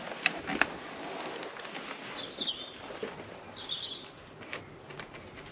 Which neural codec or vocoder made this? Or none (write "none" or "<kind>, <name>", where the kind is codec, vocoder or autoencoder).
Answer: none